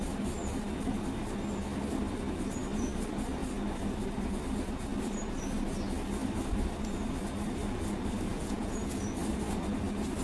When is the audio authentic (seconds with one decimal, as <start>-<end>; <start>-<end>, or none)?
0.0-8.3; 9.0-10.2